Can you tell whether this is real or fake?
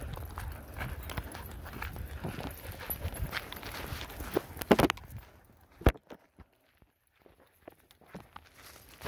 real